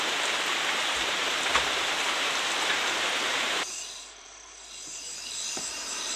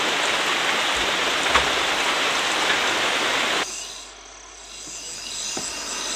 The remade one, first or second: first